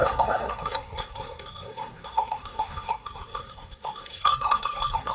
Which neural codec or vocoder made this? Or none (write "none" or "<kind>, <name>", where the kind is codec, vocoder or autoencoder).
codec, SNAC